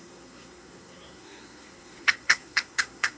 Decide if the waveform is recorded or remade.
remade